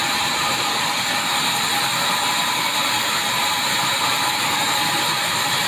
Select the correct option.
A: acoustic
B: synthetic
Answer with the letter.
A